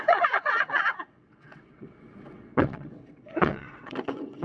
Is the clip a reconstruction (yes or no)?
yes